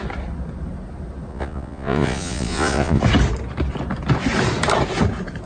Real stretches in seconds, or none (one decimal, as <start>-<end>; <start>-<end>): 0.0-1.3; 3.0-5.5